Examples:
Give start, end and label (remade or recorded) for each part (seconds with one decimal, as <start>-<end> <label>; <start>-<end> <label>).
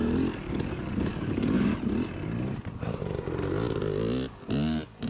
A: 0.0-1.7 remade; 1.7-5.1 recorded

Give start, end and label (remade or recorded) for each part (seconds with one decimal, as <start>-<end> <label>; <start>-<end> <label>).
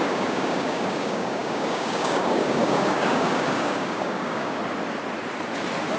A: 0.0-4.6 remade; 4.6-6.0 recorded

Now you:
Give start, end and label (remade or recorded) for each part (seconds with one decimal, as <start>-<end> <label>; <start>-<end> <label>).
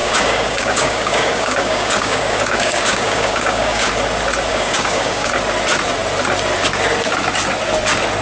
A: 0.0-3.9 remade; 3.9-4.5 recorded; 4.5-5.3 remade; 5.3-8.2 recorded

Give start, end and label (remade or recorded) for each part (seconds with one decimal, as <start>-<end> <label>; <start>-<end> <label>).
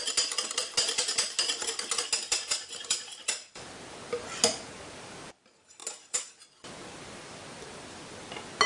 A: 0.0-8.7 recorded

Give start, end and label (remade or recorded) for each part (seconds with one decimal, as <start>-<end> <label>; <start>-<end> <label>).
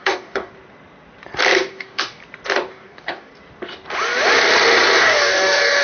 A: 0.0-0.5 remade; 0.5-1.7 recorded; 1.7-2.2 remade; 2.2-2.7 recorded; 2.7-3.3 remade; 3.3-5.0 recorded; 5.0-5.8 remade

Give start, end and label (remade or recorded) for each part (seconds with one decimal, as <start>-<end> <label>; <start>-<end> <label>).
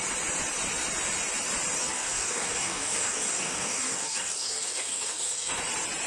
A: 0.0-1.8 recorded; 1.8-5.5 remade; 5.5-6.1 recorded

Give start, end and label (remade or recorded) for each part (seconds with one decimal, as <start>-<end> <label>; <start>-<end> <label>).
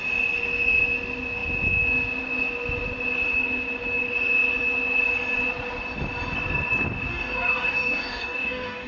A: 0.0-7.1 recorded; 7.1-8.9 remade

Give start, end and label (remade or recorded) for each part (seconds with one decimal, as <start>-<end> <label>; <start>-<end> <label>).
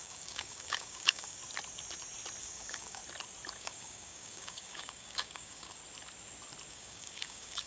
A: 0.0-1.4 remade; 1.4-2.4 recorded; 2.4-3.0 remade; 3.0-3.6 recorded; 3.6-5.8 remade; 5.8-6.7 recorded; 6.7-7.7 remade